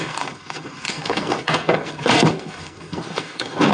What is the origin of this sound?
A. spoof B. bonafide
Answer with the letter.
A